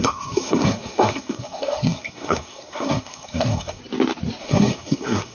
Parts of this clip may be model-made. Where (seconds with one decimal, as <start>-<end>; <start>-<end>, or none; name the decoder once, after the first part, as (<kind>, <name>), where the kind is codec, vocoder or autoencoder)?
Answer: 0.0-3.8 (codec, SNAC); 4.4-5.3